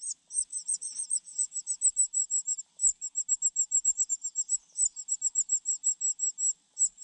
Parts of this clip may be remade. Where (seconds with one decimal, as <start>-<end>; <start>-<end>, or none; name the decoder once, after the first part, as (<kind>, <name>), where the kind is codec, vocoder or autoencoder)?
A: 0.5-1.5 (vocoder, Vocos)